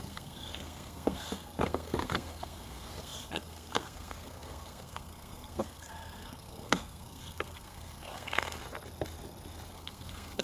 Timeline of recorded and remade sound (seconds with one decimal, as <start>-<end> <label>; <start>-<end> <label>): 0.0-8.6 remade; 8.6-9.7 recorded; 9.7-10.4 remade